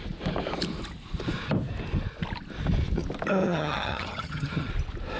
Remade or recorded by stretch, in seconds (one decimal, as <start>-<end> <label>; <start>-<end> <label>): 0.0-3.4 recorded; 3.4-4.7 remade; 4.7-5.2 recorded